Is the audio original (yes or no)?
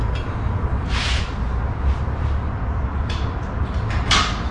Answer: yes